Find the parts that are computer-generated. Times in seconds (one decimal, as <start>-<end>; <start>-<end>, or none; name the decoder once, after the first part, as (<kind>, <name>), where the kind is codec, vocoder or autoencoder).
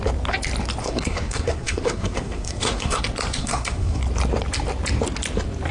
0.8-3.0 (codec, SNAC); 3.4-4.0